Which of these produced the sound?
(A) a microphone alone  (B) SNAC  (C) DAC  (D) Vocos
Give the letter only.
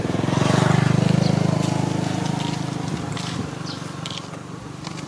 A